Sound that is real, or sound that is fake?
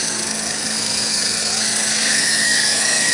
fake